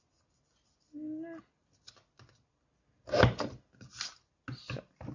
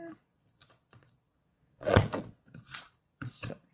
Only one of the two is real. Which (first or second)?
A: first